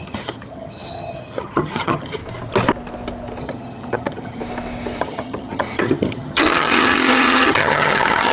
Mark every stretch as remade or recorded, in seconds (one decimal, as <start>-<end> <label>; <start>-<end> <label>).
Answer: 0.0-2.2 remade; 2.2-3.4 recorded; 3.4-4.4 remade; 4.4-5.0 recorded; 5.0-8.3 remade